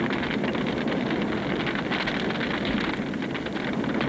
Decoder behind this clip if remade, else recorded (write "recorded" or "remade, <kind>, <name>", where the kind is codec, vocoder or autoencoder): recorded